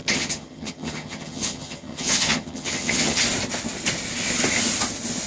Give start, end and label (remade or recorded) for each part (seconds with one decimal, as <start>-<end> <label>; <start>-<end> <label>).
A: 0.0-3.2 remade; 3.2-5.3 recorded